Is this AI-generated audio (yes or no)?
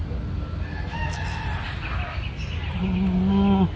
no